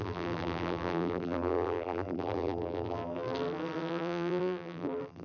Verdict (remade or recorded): remade